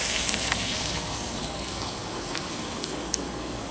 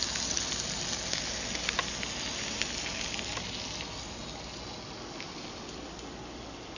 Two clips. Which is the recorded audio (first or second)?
second